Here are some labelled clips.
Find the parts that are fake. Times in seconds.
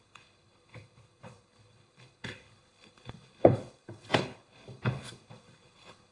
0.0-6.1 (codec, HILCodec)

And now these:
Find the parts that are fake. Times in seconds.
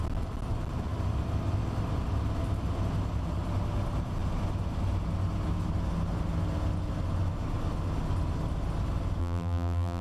9.2-10.0 (vocoder, BigVGAN v2)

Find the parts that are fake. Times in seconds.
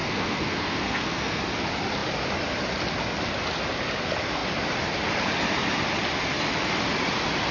0.0-1.4 (codec, SNAC)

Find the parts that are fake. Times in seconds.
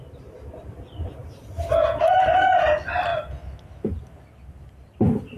none